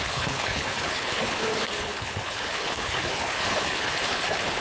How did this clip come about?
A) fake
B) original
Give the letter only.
A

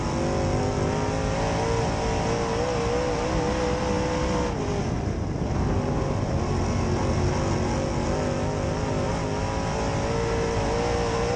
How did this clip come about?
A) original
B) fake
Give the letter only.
A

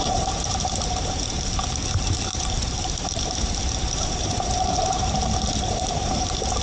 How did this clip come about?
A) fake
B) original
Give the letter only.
A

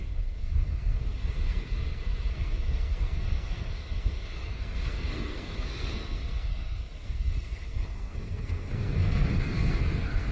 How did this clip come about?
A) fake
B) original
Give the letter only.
A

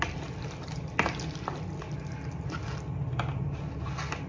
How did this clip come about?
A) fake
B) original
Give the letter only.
B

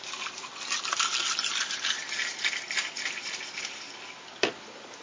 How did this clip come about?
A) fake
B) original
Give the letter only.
B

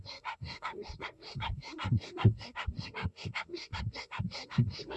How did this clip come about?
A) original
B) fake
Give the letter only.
B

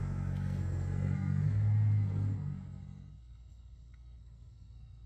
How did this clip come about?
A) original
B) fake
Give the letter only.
B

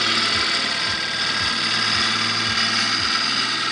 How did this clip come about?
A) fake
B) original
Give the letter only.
B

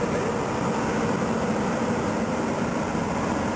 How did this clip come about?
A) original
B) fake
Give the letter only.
A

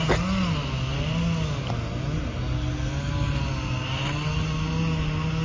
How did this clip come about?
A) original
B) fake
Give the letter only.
A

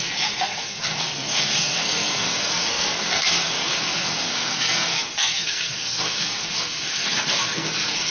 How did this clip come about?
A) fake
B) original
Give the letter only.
A